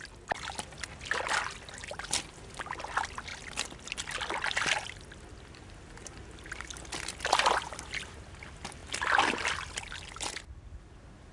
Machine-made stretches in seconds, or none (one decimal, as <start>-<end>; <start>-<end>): none